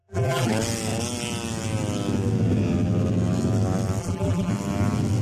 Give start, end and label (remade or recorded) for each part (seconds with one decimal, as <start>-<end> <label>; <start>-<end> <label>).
0.0-0.5 remade; 0.5-4.0 recorded; 4.0-4.5 remade; 4.5-5.2 recorded